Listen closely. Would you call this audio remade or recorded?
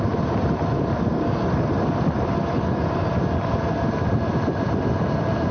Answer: remade